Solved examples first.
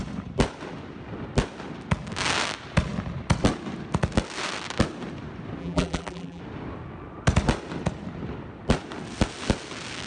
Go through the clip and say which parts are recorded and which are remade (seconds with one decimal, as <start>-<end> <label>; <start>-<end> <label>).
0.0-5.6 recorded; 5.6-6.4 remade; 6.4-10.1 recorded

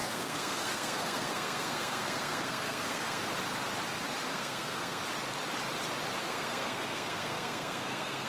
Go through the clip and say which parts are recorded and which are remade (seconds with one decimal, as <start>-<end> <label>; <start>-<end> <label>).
0.0-3.2 remade; 3.2-4.3 recorded; 4.3-5.0 remade; 5.0-6.2 recorded; 6.2-8.3 remade

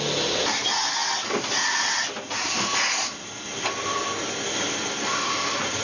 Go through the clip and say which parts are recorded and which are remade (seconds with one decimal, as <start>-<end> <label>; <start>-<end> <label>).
0.0-5.8 recorded

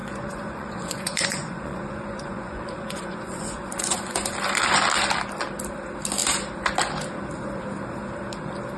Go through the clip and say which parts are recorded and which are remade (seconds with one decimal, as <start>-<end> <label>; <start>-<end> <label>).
0.0-4.3 remade; 4.3-8.8 recorded